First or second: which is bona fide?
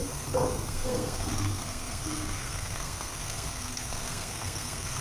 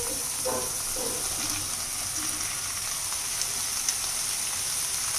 second